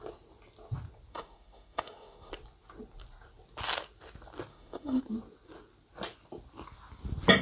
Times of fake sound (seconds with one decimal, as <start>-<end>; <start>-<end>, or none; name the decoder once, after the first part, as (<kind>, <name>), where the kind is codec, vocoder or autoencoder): 1.1-2.3 (autoencoder, DAC-VAE); 4.5-5.0